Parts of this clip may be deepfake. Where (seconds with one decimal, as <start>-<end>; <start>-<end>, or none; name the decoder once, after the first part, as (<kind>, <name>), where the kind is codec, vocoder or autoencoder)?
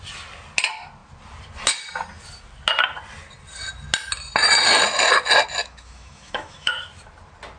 5.6-6.7 (autoencoder, DAC-VAE)